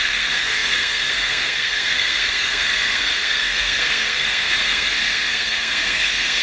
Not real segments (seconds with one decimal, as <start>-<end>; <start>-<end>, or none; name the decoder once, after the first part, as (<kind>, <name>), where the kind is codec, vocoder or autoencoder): 0.0-6.4 (codec, SNAC)